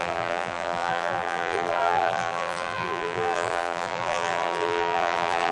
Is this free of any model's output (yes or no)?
no